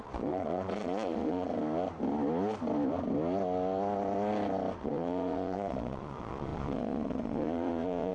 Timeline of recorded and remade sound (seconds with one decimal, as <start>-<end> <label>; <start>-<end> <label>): 0.0-1.5 remade; 1.5-4.8 recorded; 4.8-8.1 remade